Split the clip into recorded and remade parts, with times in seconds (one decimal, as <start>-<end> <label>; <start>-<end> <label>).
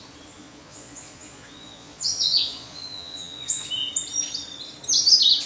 0.0-0.4 recorded; 0.4-3.7 remade; 3.7-5.5 recorded